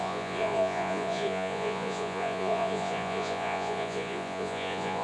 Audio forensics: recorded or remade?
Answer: remade